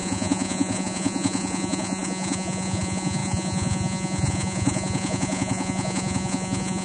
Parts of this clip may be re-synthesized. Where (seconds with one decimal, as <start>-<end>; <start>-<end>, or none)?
0.0-6.8